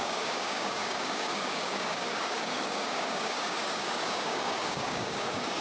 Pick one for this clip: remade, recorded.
remade